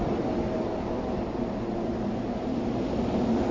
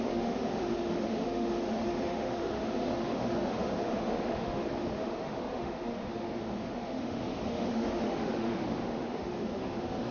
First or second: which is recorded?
first